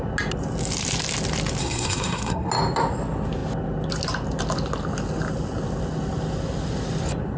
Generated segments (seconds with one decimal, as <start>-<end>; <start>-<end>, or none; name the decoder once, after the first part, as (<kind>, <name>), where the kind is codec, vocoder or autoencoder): 1.6-2.5 (codec, SNAC)